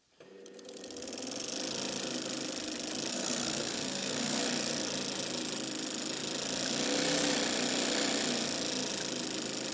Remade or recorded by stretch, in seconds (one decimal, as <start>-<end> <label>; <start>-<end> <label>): 0.0-3.1 recorded; 3.1-4.4 remade; 4.4-9.7 recorded